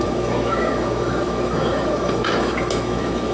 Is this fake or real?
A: fake